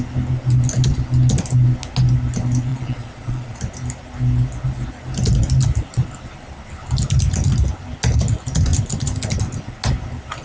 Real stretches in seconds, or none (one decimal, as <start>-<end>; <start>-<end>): 0.0-2.7; 3.6-10.4